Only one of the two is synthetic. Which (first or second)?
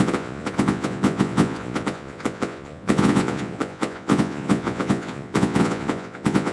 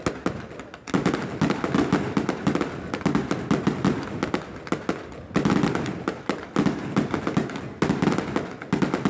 first